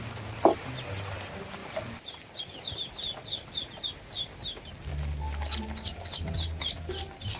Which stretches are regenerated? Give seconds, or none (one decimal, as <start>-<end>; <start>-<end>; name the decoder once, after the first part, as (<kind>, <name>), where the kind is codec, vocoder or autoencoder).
none